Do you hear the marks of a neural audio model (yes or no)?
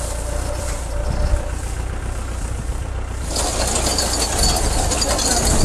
no